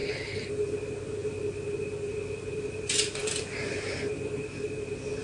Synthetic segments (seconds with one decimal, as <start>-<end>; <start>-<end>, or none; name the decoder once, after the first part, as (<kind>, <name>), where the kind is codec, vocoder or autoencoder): 0.0-0.5 (codec, HILCodec)